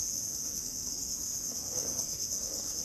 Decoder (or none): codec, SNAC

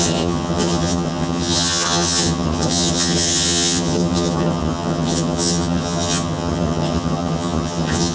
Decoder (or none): vocoder, HiFi-GAN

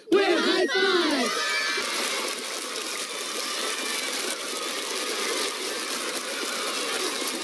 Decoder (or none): none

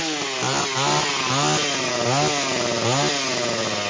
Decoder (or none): none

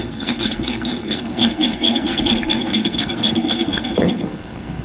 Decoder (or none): codec, SNAC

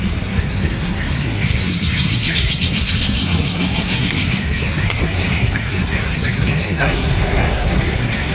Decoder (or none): codec, SNAC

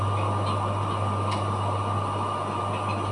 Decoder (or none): none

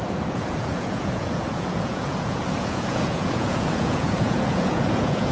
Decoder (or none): vocoder, Vocos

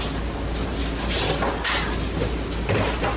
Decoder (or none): none